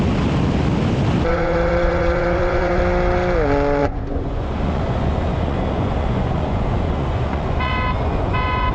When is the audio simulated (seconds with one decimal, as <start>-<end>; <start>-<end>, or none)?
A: 1.3-2.8; 3.8-8.7